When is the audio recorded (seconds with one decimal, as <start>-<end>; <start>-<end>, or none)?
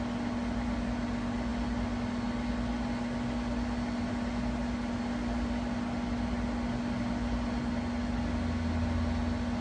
0.0-9.6